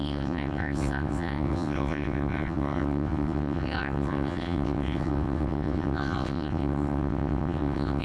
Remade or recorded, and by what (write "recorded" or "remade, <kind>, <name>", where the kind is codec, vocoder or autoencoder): remade, vocoder, WaveNeXt